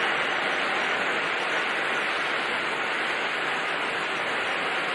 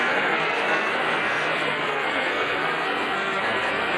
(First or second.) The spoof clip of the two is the second